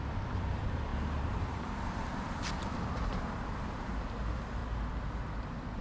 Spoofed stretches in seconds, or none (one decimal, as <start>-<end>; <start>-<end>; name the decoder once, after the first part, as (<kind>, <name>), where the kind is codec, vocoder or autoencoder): 0.0-2.1 (vocoder, BigVGAN v2); 3.0-4.6